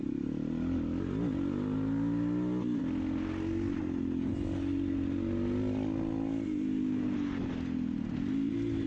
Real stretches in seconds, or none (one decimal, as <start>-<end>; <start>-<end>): 0.0-8.9